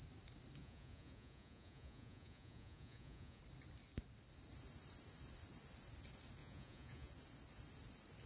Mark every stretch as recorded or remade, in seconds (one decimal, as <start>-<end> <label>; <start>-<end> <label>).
0.0-0.6 recorded; 0.6-3.4 remade; 3.4-6.4 recorded; 6.4-7.1 remade; 7.1-8.3 recorded